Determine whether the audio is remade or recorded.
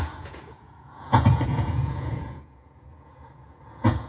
remade